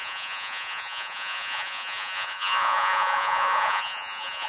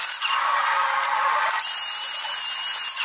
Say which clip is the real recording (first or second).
second